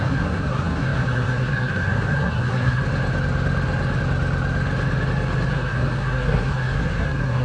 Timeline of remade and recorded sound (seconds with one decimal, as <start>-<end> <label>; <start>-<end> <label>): 0.0-2.8 remade; 2.8-5.5 recorded; 5.5-7.4 remade